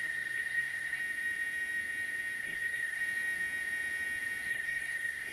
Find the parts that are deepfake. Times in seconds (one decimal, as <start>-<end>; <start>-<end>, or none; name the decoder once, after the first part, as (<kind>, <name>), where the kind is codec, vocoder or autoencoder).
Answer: 0.0-1.0 (codec, SNAC); 2.4-3.0; 4.5-5.3